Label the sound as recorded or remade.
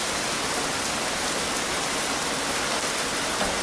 recorded